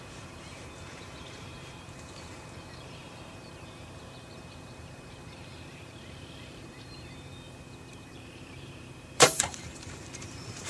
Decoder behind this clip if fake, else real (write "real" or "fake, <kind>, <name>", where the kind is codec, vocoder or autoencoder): fake, vocoder, BigVGAN v2